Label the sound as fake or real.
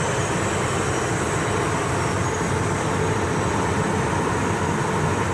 real